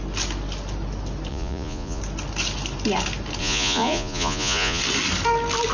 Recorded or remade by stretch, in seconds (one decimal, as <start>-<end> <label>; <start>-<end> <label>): 0.0-1.3 recorded; 1.3-2.0 remade; 2.0-3.4 recorded; 3.4-4.8 remade; 4.8-5.7 recorded